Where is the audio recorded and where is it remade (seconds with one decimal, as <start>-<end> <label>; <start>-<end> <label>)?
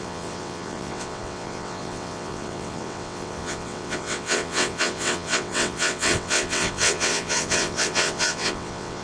0.0-9.0 remade